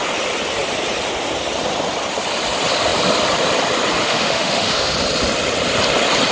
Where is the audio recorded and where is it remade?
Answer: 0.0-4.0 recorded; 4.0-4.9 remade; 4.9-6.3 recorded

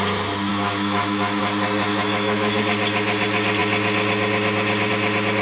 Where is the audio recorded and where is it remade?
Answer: 0.0-0.5 recorded; 0.5-1.4 remade; 1.4-1.9 recorded; 1.9-2.6 remade; 2.6-5.4 recorded

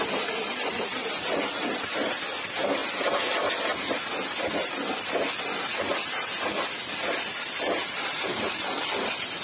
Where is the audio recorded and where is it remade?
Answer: 0.0-9.4 recorded

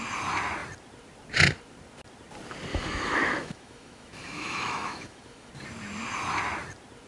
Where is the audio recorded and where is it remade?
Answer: 0.0-2.7 recorded; 2.7-5.5 remade; 5.5-7.1 recorded